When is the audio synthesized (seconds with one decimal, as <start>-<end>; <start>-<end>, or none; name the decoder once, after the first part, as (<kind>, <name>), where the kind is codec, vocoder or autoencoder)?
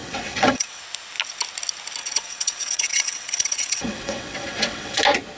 0.0-0.8 (vocoder, WaveNeXt); 2.0-5.0